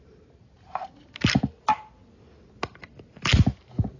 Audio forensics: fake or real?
real